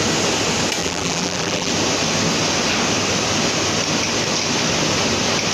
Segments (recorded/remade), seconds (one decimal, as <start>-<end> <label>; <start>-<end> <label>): 0.0-0.8 recorded; 0.8-1.7 remade; 1.7-5.5 recorded